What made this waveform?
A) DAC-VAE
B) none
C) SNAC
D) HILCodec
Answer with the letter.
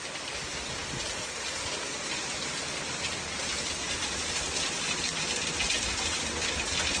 B